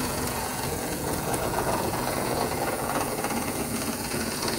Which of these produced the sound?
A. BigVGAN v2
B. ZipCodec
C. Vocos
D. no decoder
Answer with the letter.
C